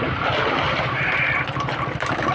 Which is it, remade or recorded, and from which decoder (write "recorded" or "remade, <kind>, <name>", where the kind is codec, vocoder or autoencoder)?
recorded